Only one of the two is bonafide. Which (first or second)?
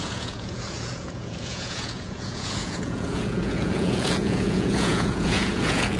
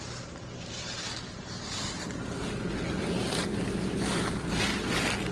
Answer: second